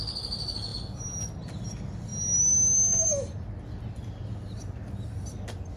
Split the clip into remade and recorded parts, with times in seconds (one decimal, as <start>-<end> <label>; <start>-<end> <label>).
0.0-5.8 recorded